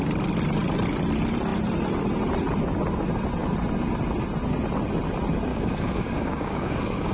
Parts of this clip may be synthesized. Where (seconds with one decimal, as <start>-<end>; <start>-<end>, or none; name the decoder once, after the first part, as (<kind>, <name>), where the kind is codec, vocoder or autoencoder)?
5.5-7.1 (codec, DAC)